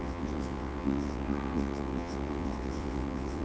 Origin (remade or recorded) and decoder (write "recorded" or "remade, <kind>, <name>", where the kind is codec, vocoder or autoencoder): remade, vocoder, WaveNeXt